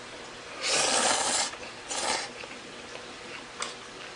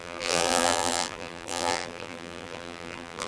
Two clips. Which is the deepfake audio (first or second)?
second